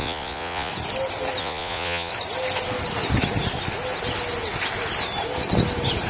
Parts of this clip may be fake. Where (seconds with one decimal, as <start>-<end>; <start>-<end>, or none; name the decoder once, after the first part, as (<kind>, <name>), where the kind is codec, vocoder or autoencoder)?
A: 0.0-0.7 (vocoder, Vocos); 1.4-2.1